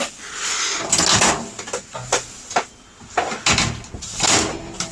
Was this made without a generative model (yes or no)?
yes